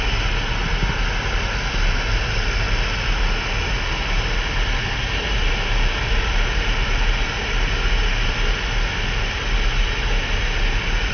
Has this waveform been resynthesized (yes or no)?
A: no